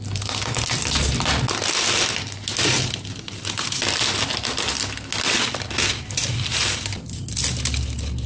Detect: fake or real real